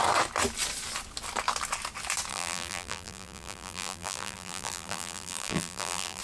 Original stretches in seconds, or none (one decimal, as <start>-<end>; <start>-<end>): 0.0-2.3